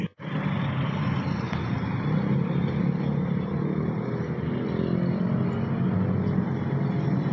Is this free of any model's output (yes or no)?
yes